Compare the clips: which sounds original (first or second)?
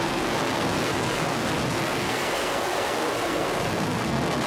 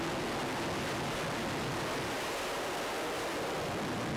second